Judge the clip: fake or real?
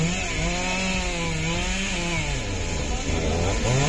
real